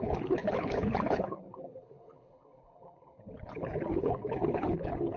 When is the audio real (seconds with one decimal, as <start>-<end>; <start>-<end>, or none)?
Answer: none